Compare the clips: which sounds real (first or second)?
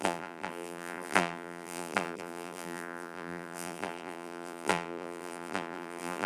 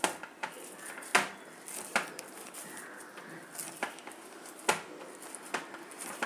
second